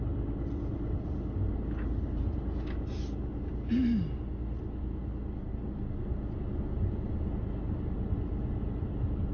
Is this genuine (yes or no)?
yes